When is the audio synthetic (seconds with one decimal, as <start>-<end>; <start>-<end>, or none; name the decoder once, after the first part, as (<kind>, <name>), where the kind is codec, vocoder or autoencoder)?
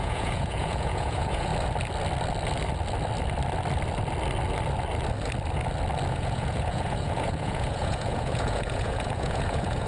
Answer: 0.0-1.5 (vocoder, Vocos); 6.1-9.9